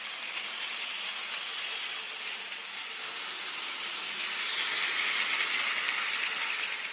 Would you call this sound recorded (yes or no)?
yes